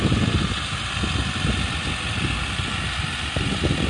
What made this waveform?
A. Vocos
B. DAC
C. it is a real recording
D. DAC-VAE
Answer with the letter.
C